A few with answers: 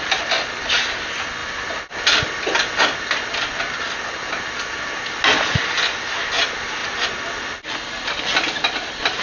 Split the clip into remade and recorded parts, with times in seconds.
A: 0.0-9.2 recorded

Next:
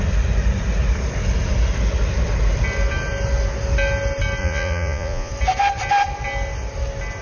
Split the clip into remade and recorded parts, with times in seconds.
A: 0.0-4.4 recorded; 4.4-5.3 remade; 5.3-7.2 recorded

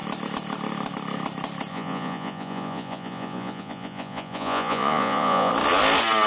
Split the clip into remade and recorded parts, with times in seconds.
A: 0.0-1.7 recorded; 1.7-5.5 remade; 5.5-6.3 recorded

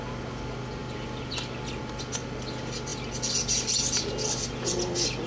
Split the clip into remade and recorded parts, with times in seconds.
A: 0.0-5.3 recorded

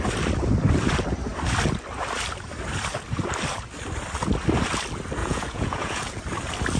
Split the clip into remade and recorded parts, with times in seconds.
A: 0.0-5.2 recorded; 5.2-6.2 remade; 6.2-6.8 recorded